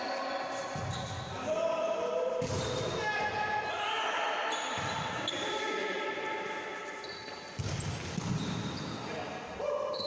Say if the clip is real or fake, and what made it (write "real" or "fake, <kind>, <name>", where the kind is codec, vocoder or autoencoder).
real